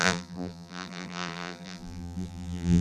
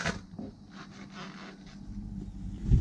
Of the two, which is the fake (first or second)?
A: first